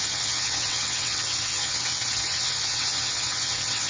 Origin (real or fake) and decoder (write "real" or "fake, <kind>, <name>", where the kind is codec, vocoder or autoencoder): fake, vocoder, WaveNeXt